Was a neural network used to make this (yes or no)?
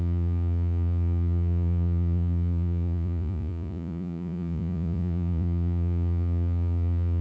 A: yes